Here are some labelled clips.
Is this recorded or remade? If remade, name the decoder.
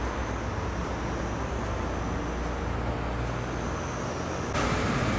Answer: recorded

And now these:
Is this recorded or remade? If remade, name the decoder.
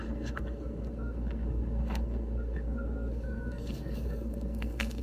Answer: remade, codec, SNAC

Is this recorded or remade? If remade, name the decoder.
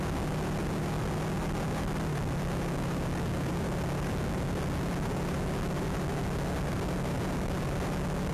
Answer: recorded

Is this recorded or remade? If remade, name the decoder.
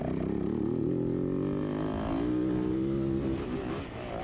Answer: recorded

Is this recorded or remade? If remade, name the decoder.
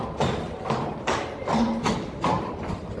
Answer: recorded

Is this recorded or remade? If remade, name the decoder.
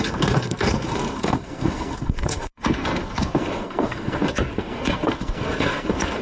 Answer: remade, codec, SNAC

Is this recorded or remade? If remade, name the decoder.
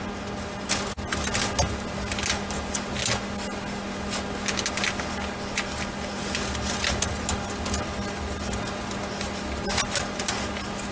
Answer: recorded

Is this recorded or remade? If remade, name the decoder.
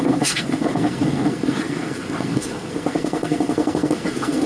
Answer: remade, codec, SNAC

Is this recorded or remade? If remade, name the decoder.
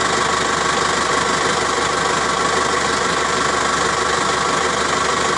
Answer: recorded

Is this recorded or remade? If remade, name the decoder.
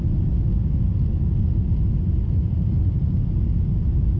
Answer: recorded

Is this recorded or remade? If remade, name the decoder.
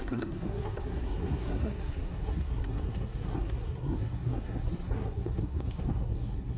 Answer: remade, codec, SNAC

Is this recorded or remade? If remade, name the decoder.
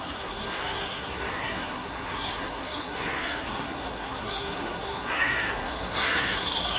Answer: remade, codec, SNAC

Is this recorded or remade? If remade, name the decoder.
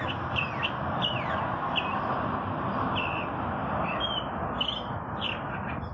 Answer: recorded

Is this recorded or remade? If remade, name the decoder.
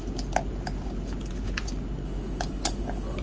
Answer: recorded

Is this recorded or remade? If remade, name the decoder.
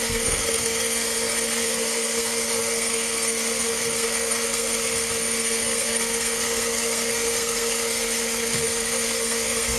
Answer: remade, codec, SNAC